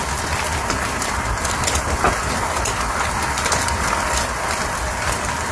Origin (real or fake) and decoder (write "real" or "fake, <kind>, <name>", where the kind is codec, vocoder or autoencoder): real